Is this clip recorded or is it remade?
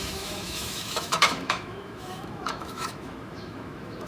remade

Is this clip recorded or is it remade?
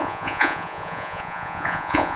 remade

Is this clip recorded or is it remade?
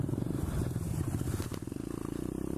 recorded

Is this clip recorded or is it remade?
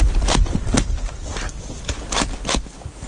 recorded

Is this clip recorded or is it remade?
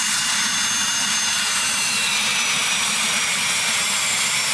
recorded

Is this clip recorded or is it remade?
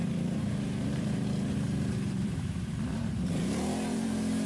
remade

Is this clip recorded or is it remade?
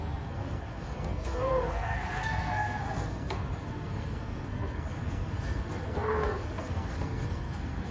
remade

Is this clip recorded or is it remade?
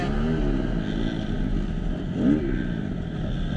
recorded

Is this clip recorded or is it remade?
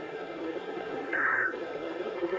remade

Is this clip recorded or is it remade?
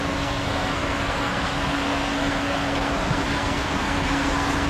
remade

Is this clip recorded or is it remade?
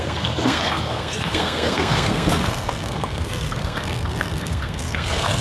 remade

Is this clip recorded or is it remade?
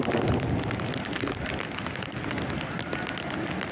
recorded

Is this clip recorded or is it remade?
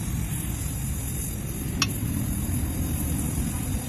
recorded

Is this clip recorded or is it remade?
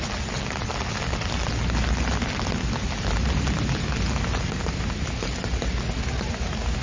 recorded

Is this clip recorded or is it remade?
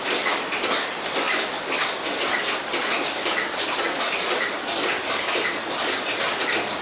recorded